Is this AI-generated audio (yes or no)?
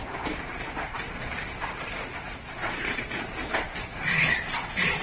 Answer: yes